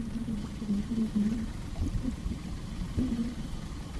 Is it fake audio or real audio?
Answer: fake